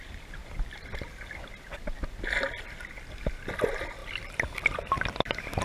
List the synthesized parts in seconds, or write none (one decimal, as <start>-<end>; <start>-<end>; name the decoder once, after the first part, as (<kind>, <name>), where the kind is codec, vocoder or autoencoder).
none